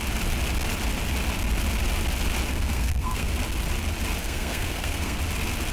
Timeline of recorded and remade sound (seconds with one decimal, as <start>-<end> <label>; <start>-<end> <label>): 0.0-2.5 recorded; 2.5-3.3 remade; 3.3-4.2 recorded; 4.2-5.2 remade; 5.2-5.7 recorded